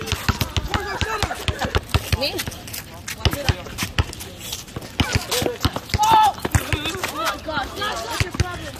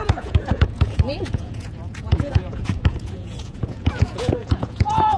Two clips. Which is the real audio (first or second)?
first